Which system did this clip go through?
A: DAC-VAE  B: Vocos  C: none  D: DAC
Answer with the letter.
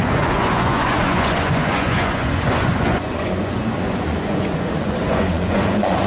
B